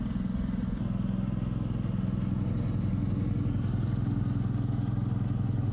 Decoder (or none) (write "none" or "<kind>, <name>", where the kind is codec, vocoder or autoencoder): none